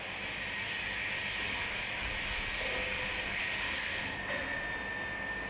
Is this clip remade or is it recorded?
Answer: recorded